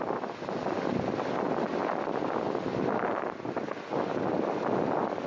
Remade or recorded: recorded